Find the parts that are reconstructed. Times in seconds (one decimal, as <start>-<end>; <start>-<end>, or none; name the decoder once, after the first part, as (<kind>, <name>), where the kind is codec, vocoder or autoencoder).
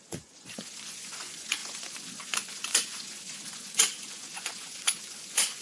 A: 0.0-5.6 (vocoder, Vocos)